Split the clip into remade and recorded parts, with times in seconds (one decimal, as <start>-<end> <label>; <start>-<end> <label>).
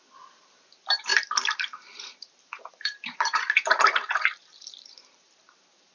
0.0-5.9 remade